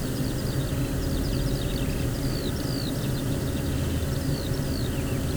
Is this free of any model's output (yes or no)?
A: yes